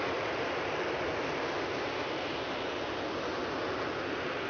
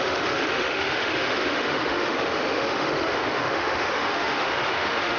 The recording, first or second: first